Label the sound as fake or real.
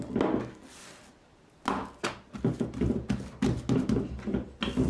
real